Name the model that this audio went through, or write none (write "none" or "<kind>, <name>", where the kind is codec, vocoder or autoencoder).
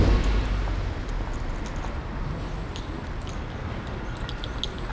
none